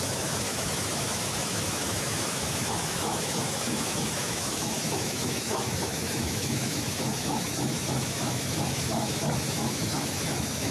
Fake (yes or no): yes